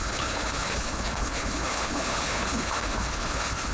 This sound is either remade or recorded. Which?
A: remade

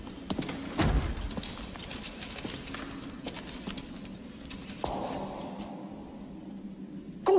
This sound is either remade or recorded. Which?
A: recorded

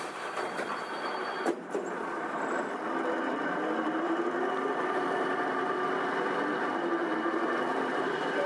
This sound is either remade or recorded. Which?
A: remade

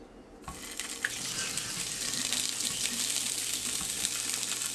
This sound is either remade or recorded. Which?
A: recorded